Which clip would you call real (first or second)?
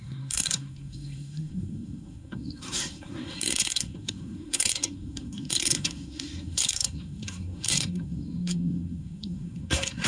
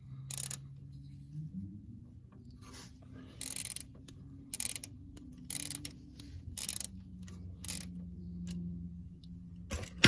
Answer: second